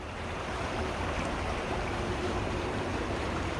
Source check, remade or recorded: remade